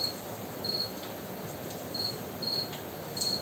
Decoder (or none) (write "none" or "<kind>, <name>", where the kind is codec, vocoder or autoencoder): none